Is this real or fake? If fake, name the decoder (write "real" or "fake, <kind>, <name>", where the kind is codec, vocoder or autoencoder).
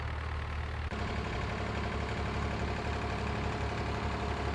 real